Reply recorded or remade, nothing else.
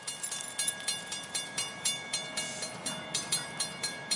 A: remade